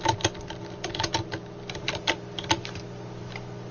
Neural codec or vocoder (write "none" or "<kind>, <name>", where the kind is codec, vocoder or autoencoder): none